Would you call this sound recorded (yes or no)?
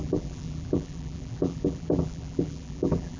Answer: no